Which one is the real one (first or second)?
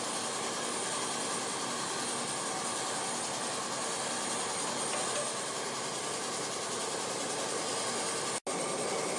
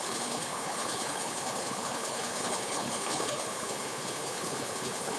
first